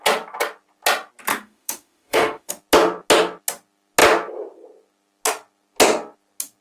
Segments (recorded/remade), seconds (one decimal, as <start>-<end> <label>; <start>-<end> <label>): 0.0-1.3 recorded; 1.3-2.5 remade; 2.5-6.6 recorded